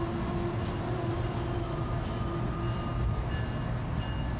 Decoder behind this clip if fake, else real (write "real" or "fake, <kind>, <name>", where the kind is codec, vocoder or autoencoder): real